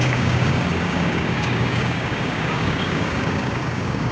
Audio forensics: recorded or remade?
remade